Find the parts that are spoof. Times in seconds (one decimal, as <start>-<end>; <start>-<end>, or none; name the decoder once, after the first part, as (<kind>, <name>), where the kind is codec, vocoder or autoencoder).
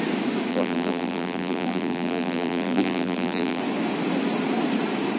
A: 0.5-3.6 (vocoder, BigVGAN v2)